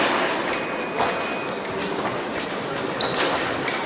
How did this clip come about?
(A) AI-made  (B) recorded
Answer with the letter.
B